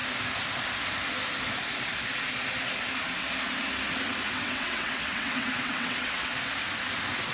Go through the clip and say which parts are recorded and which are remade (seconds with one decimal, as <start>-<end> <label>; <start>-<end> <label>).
0.0-4.3 recorded; 4.3-6.3 remade; 6.3-7.3 recorded